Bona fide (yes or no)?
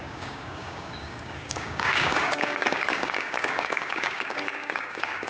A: no